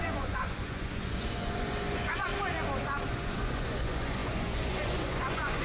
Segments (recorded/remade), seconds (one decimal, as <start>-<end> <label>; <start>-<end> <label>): 0.0-2.3 remade; 2.3-3.1 recorded; 3.1-5.6 remade